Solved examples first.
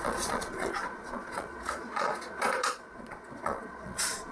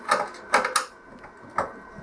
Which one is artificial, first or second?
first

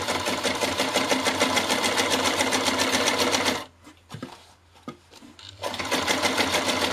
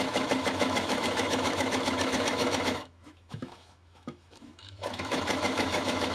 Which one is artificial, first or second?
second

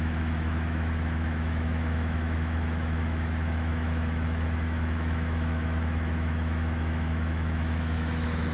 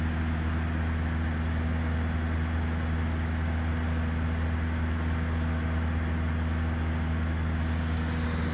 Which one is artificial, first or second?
first